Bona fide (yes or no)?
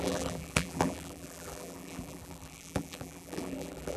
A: no